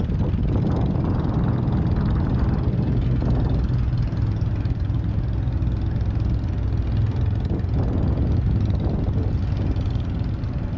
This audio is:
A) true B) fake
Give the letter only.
A